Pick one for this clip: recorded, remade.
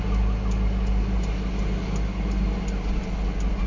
recorded